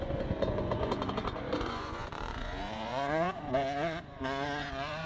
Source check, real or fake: fake